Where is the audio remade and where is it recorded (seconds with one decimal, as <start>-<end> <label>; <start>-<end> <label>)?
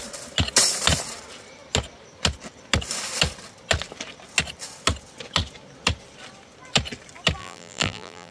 0.0-7.4 recorded; 7.4-8.3 remade